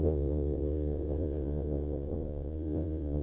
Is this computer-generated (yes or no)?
yes